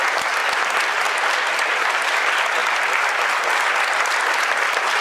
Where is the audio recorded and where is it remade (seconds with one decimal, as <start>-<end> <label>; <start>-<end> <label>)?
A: 0.0-5.0 recorded